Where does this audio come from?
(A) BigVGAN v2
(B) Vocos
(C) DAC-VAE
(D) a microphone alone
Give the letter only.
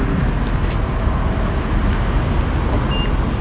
D